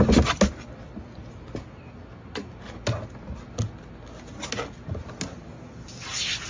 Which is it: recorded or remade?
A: recorded